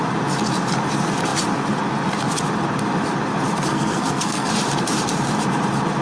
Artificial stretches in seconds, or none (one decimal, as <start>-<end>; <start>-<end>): 3.7-4.5